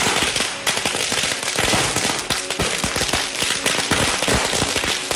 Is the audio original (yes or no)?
yes